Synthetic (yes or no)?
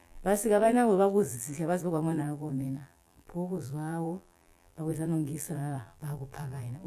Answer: yes